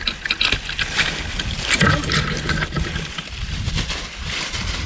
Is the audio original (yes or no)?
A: yes